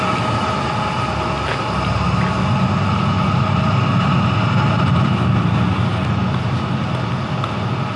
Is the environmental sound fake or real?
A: real